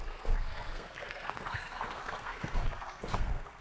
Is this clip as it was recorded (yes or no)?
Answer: no